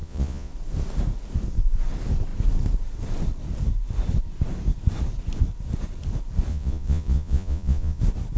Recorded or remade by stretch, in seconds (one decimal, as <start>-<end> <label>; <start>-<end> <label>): 0.0-0.5 remade; 0.5-6.5 recorded; 6.5-8.0 remade; 8.0-8.4 recorded